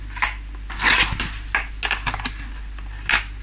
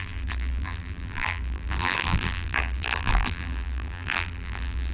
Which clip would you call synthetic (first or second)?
second